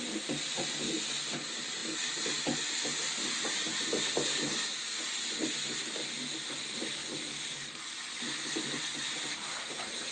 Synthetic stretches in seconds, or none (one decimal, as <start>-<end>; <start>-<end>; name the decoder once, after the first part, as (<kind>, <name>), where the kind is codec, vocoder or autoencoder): none